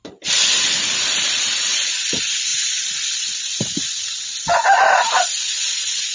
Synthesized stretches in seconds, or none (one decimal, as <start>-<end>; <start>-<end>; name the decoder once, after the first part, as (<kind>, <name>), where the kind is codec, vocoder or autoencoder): none